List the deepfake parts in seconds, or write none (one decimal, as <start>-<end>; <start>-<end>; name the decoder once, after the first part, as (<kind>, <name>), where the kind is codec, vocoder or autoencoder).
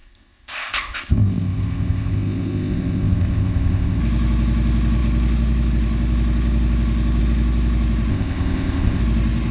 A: 0.0-4.0 (codec, ZipCodec); 8.1-9.0